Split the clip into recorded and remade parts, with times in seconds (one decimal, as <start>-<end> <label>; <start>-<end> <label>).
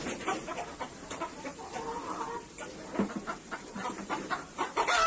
0.0-0.5 recorded; 0.5-2.2 remade; 2.2-3.8 recorded; 3.8-5.1 remade